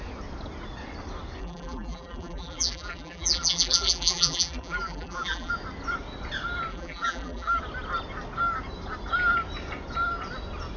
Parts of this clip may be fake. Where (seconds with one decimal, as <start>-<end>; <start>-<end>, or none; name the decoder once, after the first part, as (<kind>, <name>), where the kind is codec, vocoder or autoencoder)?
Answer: 1.4-5.5 (vocoder, BigVGAN v2); 6.7-7.6